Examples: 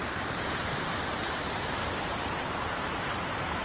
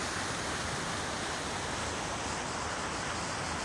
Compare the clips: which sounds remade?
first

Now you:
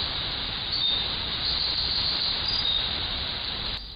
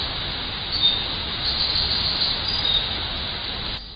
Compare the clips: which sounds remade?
first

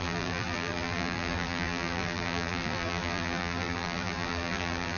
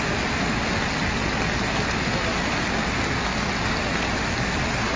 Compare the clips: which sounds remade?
first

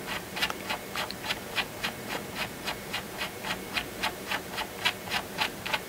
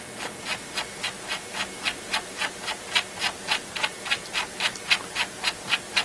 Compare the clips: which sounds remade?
first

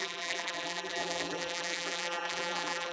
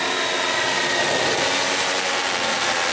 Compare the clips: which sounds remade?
first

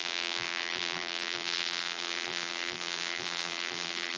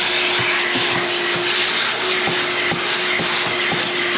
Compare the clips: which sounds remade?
first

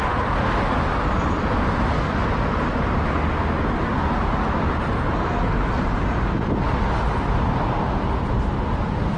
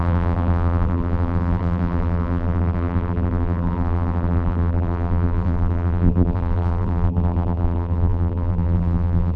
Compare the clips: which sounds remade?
second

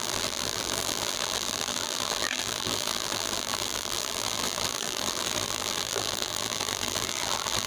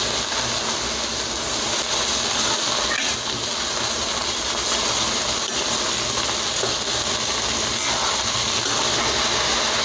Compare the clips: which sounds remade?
first